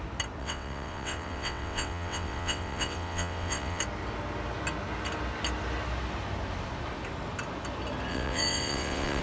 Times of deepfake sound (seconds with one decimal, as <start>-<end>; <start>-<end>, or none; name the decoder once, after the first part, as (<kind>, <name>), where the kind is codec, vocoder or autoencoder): 0.4-3.8 (vocoder, WaveNeXt); 8.1-9.2

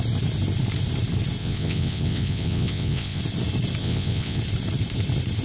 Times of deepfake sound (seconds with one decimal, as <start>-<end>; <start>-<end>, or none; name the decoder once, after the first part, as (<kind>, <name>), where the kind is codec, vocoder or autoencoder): 1.4-3.2 (vocoder, WaveNeXt); 3.8-4.4